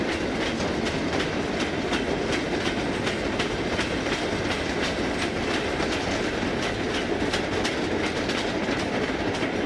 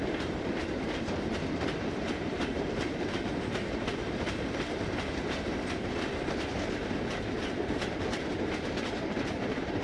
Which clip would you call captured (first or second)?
first